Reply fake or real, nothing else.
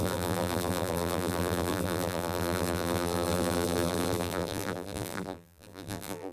fake